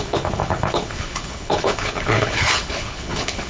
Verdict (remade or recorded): remade